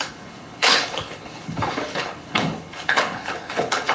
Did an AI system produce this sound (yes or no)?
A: yes